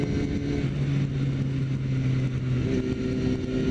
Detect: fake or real real